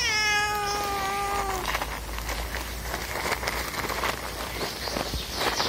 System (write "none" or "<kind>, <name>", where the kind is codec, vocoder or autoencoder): none